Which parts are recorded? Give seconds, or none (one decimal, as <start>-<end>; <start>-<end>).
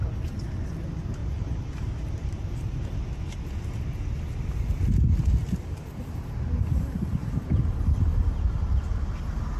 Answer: 0.0-1.2; 3.4-7.2; 7.8-9.6